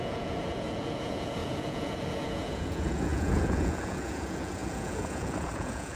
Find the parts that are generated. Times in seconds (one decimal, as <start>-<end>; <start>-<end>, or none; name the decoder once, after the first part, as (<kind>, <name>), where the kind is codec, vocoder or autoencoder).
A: 0.0-6.0 (vocoder, Vocos)